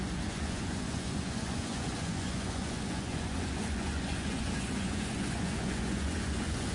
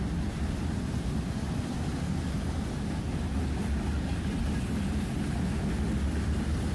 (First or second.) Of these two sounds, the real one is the second